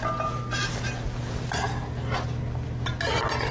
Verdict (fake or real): real